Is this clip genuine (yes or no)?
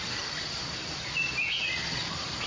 yes